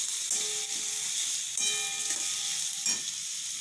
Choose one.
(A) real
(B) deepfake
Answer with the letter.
A